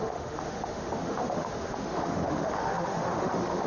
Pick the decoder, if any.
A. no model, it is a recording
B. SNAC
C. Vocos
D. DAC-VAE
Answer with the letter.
D